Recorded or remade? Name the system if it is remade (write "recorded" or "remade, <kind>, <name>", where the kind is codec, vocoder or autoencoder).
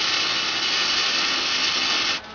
recorded